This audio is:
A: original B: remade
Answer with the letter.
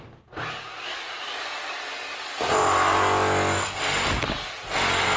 A